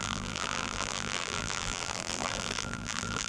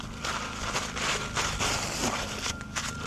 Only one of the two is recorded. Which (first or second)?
second